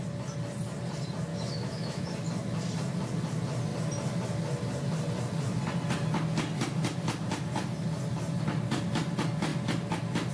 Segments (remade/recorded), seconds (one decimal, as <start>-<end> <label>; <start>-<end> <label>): 0.0-1.3 recorded; 1.3-2.0 remade; 2.0-10.3 recorded